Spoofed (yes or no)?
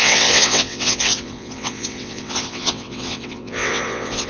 yes